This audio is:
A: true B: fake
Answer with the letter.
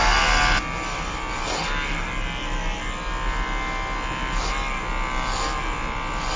A